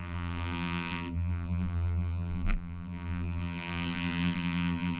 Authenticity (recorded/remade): remade